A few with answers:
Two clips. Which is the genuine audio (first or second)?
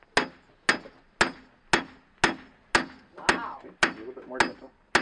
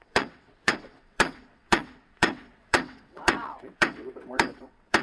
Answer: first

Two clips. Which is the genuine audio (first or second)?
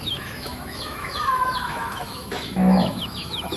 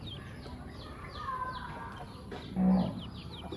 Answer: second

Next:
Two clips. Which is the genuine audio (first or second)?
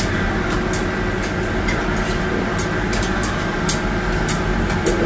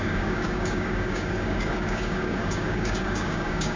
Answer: first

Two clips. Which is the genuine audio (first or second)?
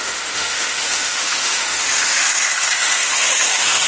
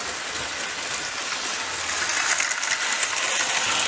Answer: second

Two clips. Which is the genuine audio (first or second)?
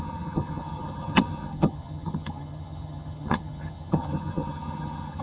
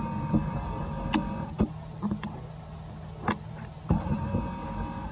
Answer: second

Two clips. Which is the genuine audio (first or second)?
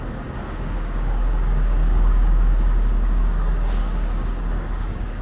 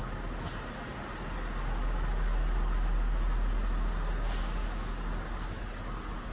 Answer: second